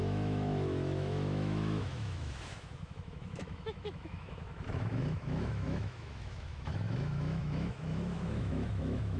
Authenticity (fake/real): fake